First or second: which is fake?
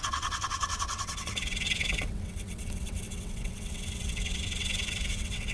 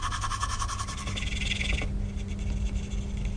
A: first